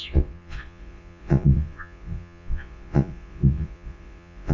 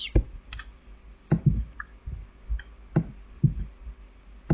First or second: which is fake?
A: first